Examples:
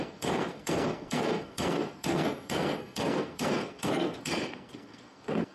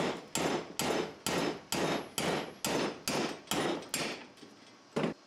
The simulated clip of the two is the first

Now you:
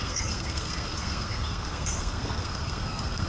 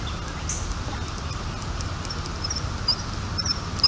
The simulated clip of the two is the first